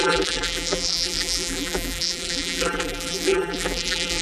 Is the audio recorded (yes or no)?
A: no